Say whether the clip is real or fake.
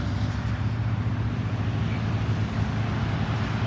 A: real